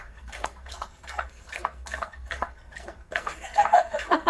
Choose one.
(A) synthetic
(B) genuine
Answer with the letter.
A